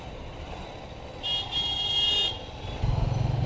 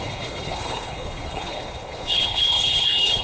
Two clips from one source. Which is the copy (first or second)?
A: second